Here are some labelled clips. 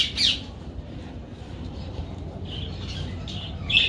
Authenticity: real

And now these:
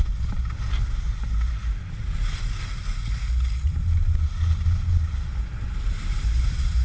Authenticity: real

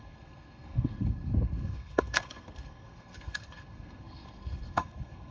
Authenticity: fake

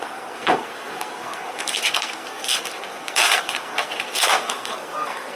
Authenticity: fake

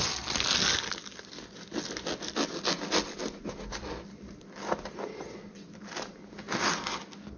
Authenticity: real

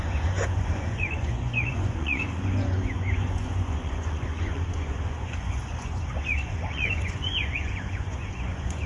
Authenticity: fake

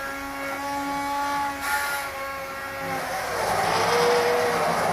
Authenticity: real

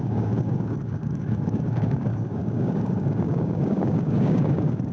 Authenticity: fake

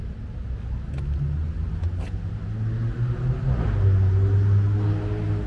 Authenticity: real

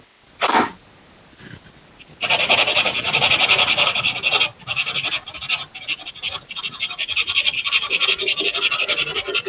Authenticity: real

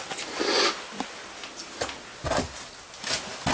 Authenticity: real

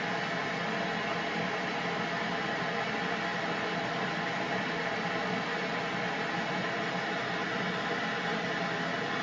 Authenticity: real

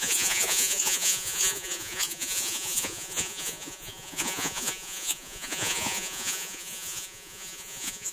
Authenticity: fake